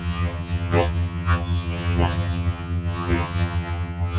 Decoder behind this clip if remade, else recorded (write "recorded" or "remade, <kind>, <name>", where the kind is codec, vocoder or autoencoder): remade, vocoder, HiFi-GAN